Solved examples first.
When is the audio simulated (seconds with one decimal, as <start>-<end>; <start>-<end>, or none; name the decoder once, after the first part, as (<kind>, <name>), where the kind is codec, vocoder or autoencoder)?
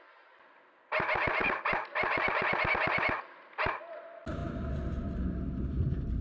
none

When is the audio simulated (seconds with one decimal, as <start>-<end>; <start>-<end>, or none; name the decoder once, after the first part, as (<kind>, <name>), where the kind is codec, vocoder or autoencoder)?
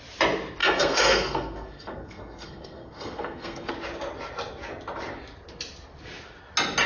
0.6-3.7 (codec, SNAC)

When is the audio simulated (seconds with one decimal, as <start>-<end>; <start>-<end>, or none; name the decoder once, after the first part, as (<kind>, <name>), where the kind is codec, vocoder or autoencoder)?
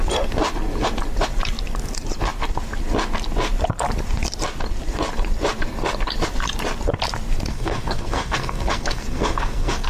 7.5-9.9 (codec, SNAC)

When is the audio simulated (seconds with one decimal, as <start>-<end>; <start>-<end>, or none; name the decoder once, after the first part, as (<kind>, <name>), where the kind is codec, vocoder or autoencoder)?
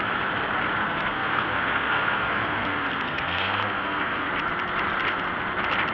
0.8-4.3 (codec, SNAC)